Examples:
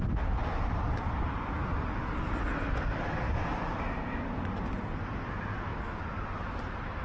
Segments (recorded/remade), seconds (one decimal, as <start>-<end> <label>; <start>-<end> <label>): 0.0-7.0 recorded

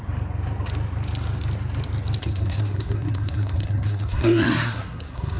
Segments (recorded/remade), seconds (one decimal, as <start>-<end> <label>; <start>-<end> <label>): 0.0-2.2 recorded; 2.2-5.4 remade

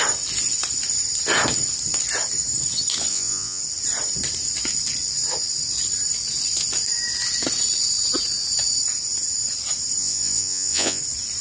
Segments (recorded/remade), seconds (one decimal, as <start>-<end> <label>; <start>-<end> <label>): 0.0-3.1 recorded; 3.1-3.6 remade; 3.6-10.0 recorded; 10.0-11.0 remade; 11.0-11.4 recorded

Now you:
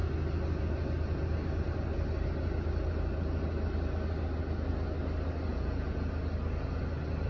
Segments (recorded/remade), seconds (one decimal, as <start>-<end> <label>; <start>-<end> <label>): 0.0-5.5 recorded; 5.5-6.1 remade; 6.1-7.3 recorded

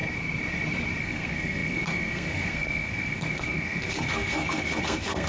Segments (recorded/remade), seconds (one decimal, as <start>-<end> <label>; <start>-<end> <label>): 0.0-1.0 recorded; 1.0-5.3 remade

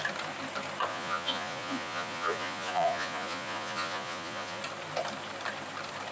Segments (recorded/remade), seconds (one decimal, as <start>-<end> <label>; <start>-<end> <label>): 0.0-0.9 recorded; 0.9-4.6 remade; 4.6-6.1 recorded